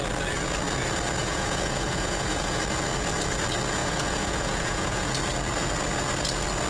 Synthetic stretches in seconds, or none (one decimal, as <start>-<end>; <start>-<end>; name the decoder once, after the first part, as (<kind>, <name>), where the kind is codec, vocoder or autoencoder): 1.2-2.6 (vocoder, Vocos); 3.8-5.1